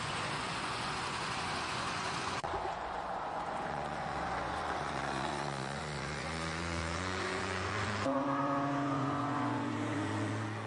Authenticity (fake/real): fake